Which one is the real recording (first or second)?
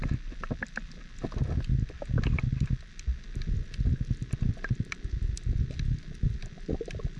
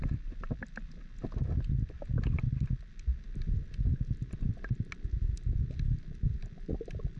first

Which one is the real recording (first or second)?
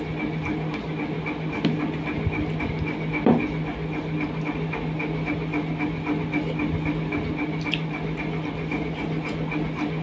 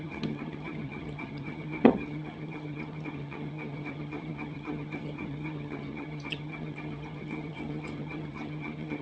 first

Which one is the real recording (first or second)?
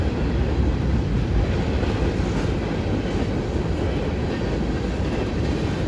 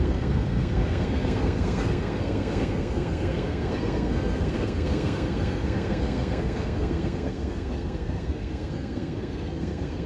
first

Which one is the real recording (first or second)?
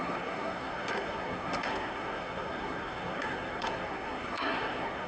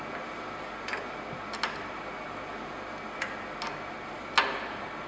second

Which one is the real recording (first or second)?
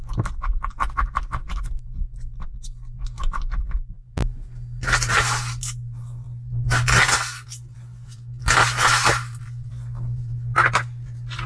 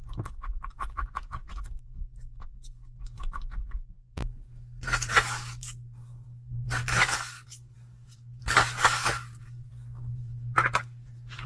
first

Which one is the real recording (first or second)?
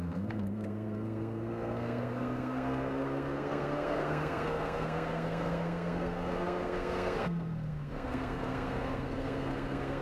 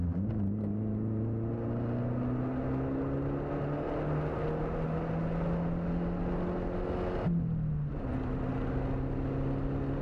second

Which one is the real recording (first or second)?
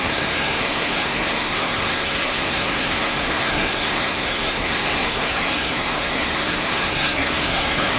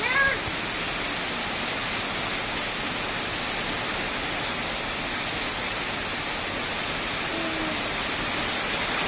second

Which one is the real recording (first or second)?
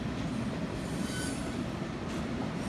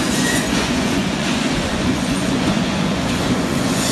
first